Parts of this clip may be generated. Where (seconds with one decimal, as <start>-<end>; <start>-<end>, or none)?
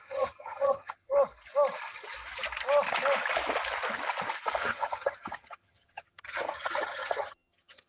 0.0-1.1; 4.6-7.9